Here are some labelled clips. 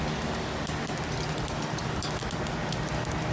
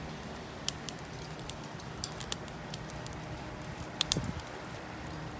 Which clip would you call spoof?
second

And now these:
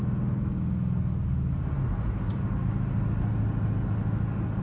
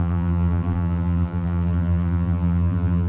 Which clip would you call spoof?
second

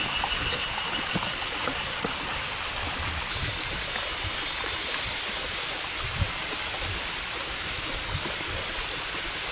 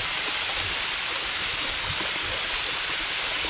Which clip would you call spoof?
first